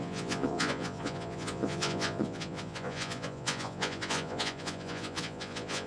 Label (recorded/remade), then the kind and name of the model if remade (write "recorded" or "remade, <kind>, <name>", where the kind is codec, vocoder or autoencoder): remade, vocoder, Vocos